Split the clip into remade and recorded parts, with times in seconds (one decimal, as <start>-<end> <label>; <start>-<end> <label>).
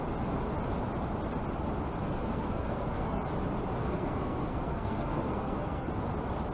0.0-2.0 recorded; 2.0-3.2 remade; 3.2-3.8 recorded; 3.8-5.9 remade; 5.9-6.5 recorded